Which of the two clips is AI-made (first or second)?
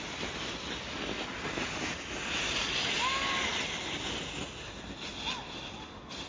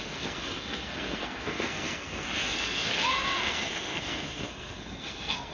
second